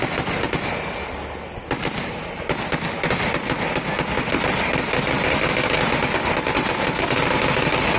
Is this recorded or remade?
recorded